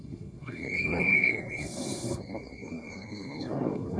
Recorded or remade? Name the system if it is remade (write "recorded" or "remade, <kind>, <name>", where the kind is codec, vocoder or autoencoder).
remade, codec, SNAC